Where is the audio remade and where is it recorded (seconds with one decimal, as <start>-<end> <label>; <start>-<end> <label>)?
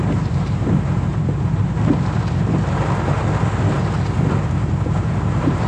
0.0-1.1 remade; 1.1-4.2 recorded; 4.2-5.7 remade